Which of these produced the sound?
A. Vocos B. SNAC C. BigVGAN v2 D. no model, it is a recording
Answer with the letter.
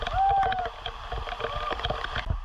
D